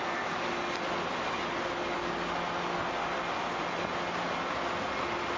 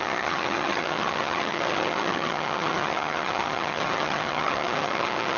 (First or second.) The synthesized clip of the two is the second